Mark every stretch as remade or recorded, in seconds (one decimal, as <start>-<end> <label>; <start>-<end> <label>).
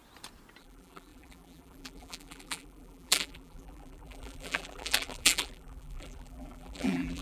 0.0-0.6 recorded; 0.6-7.2 remade